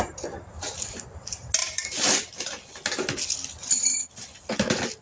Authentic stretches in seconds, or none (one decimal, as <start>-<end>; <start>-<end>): 0.0-1.6; 2.7-5.0